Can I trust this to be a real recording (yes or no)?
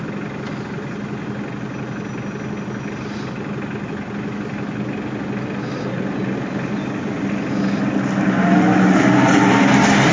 yes